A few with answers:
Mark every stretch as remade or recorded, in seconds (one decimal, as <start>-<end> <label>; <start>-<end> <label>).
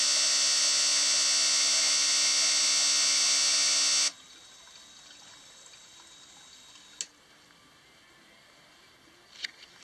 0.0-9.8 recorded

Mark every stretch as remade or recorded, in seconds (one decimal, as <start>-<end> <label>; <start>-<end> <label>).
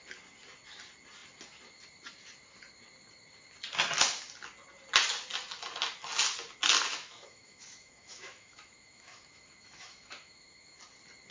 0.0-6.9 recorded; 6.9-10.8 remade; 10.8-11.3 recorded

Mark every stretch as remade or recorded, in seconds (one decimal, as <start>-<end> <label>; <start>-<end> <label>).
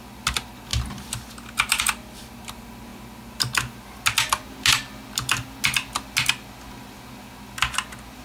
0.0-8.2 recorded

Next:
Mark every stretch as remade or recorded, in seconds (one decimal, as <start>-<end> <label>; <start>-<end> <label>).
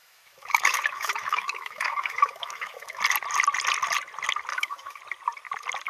0.0-3.0 remade; 3.0-4.5 recorded; 4.5-5.0 remade; 5.0-5.9 recorded